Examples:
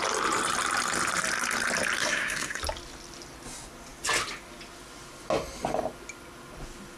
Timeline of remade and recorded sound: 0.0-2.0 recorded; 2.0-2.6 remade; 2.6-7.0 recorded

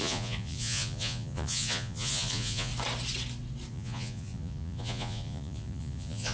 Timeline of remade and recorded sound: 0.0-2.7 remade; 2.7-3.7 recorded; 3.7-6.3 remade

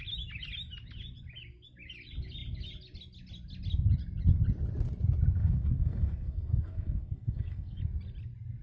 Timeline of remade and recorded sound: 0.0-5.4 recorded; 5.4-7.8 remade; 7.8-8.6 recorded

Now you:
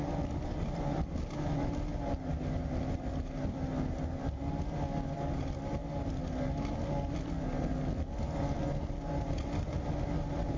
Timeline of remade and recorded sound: 0.0-10.6 recorded

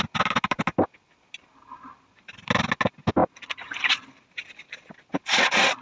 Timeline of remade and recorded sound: 0.0-5.8 recorded

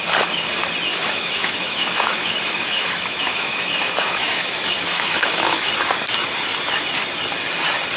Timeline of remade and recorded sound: 0.0-0.9 recorded; 0.9-5.7 remade; 5.7-8.0 recorded

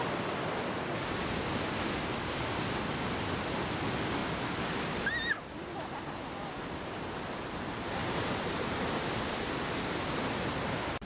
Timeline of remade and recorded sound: 0.0-8.0 recorded; 8.0-8.9 remade; 8.9-11.0 recorded